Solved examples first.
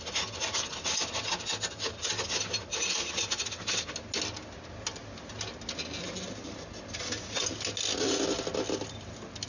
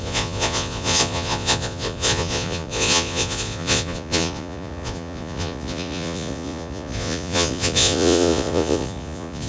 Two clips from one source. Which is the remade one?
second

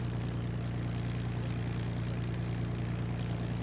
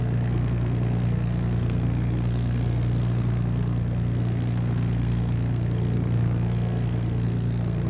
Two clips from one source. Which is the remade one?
second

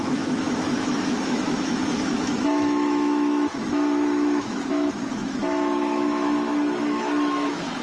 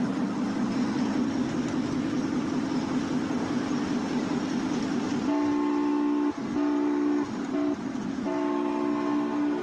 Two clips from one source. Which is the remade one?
first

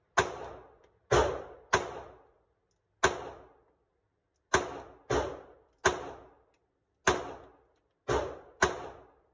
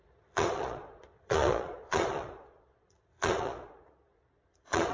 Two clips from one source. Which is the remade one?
second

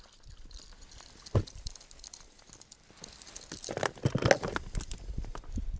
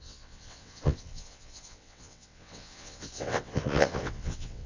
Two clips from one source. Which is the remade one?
second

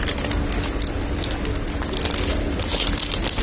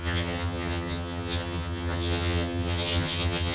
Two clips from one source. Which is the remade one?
second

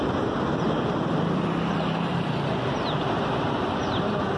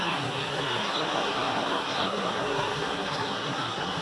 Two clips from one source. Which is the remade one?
second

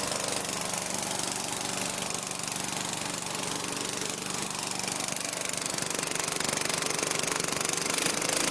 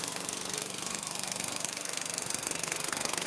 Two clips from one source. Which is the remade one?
second